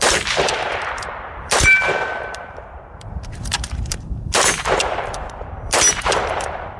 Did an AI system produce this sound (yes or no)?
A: yes